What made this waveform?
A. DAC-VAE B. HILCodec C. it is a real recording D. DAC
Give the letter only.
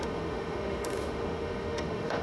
A